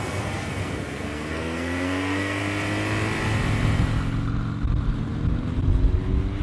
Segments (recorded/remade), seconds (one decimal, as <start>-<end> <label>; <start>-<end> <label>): 0.0-2.4 remade; 2.4-6.4 recorded